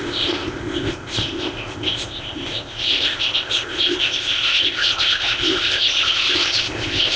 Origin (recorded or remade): remade